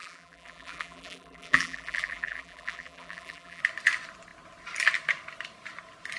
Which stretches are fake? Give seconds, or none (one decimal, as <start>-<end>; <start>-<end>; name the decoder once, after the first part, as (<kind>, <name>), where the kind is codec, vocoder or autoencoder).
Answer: 0.0-3.6 (vocoder, BigVGAN v2)